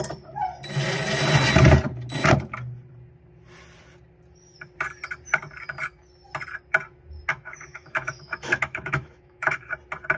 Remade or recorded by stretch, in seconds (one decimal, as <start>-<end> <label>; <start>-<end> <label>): 0.0-7.3 recorded; 7.3-9.7 remade; 9.7-10.2 recorded